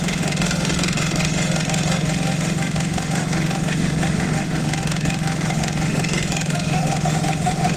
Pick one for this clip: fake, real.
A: fake